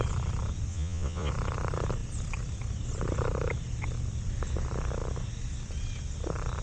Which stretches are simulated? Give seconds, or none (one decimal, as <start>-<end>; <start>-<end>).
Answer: 0.7-1.3